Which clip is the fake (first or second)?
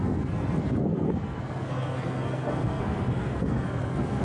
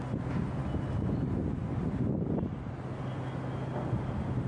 first